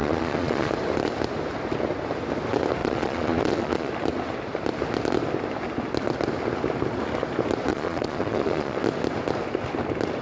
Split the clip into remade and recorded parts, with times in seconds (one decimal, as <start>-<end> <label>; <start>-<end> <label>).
0.0-0.7 remade; 0.7-2.8 recorded; 2.8-3.9 remade; 3.9-7.7 recorded; 7.7-8.8 remade; 8.8-10.2 recorded